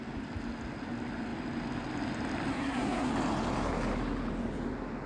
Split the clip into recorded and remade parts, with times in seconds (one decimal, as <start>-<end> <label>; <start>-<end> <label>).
0.0-2.5 recorded; 2.5-3.1 remade; 3.1-5.1 recorded